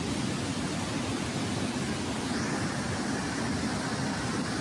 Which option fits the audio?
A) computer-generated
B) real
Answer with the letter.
B